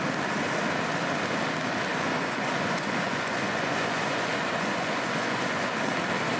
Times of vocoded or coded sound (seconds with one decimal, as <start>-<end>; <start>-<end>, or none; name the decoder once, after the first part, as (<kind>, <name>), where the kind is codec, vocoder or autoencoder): 1.9-5.7 (vocoder, Vocos)